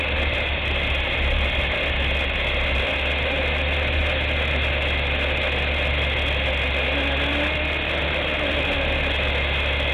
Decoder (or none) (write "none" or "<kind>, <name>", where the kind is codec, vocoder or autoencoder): none